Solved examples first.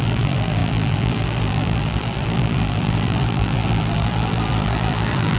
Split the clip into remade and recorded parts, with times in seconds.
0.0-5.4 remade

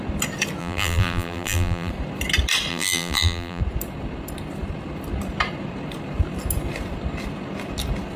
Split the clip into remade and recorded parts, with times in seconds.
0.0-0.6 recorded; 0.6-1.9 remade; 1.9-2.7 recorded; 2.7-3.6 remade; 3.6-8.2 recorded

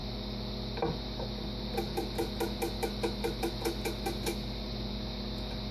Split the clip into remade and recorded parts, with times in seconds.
0.0-5.7 recorded

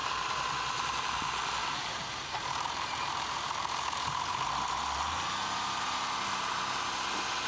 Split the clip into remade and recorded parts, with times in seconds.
0.0-4.5 remade; 4.5-7.5 recorded

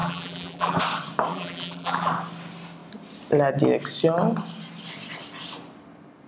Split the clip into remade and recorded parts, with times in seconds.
0.0-0.8 remade; 0.8-1.3 recorded; 1.3-2.1 remade; 2.1-6.3 recorded

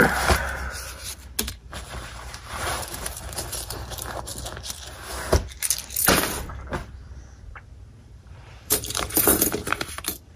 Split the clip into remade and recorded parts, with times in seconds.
0.0-0.4 remade; 0.4-1.5 recorded; 1.5-4.3 remade; 4.3-8.0 recorded; 8.0-10.4 remade

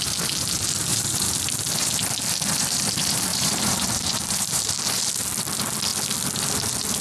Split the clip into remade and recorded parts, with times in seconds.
0.0-0.9 recorded; 0.9-1.4 remade; 1.4-3.3 recorded; 3.3-4.7 remade; 4.7-7.0 recorded

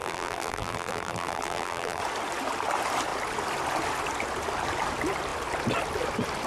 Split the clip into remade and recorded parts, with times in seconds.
0.0-2.0 remade; 2.0-6.5 recorded